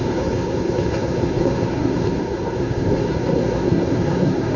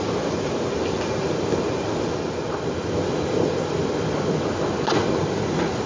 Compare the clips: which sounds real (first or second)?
second